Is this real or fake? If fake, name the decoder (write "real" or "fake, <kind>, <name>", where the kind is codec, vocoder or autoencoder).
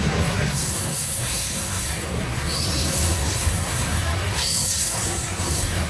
fake, codec, SNAC